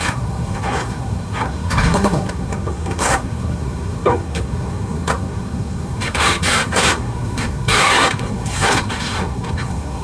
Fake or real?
fake